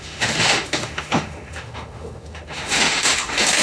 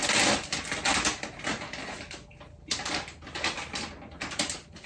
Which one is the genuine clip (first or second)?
second